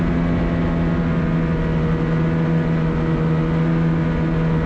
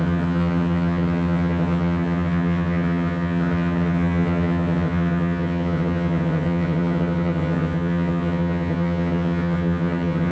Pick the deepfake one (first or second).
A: second